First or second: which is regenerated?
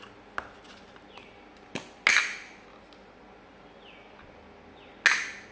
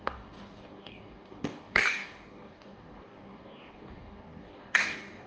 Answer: second